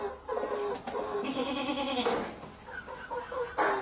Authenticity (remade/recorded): recorded